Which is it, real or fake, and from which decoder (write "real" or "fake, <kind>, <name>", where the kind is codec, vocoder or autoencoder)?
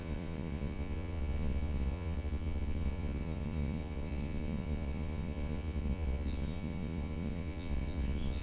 fake, vocoder, Vocos